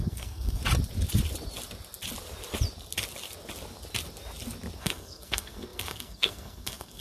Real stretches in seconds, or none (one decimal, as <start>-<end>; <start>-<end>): 0.6-4.8